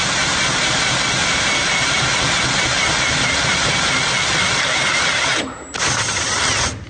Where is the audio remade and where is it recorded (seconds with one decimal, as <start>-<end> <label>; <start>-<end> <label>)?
0.0-1.2 recorded; 1.2-2.0 remade; 2.0-4.9 recorded; 4.9-5.4 remade; 5.4-6.9 recorded